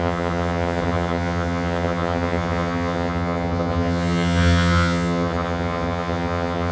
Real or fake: fake